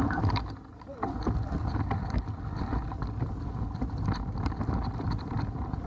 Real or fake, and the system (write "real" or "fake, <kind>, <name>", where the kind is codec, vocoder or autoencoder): real